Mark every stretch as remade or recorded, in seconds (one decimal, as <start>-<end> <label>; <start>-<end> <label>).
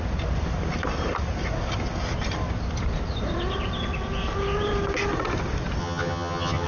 0.0-5.8 recorded; 5.8-6.7 remade